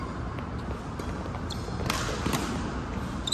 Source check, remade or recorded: recorded